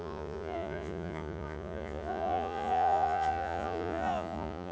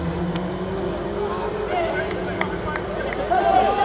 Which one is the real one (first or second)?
second